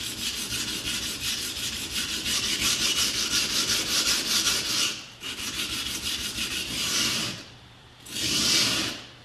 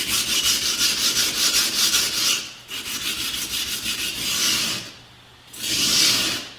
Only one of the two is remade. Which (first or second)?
first